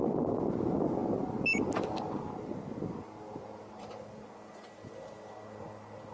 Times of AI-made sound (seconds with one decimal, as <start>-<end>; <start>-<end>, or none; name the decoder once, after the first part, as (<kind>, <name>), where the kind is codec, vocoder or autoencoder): none